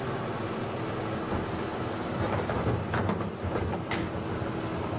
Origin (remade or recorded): recorded